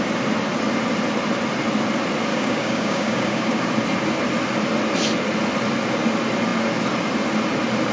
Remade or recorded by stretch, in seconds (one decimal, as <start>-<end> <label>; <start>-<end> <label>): 0.0-2.3 recorded; 2.3-3.7 remade; 3.7-7.9 recorded